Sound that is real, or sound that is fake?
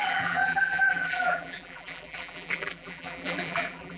fake